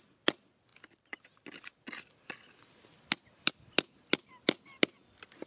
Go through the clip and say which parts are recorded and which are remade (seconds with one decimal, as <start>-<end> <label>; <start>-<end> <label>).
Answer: 0.0-5.5 recorded